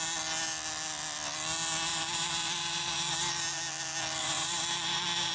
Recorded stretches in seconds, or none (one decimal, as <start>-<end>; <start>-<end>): 0.0-1.9; 3.3-4.2